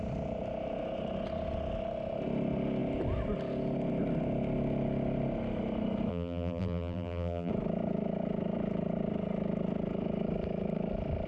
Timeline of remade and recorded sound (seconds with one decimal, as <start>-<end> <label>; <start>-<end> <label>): 0.0-6.1 recorded; 6.1-7.5 remade; 7.5-11.3 recorded